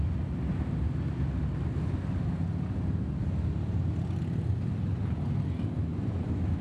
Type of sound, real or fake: real